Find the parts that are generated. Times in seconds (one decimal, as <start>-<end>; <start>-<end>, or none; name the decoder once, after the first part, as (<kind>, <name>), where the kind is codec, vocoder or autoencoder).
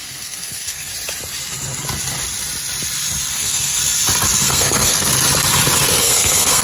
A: 0.0-0.9 (codec, SNAC); 3.3-3.8; 4.4-5.1; 6.0-6.6